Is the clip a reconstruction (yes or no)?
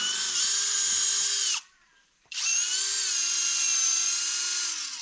no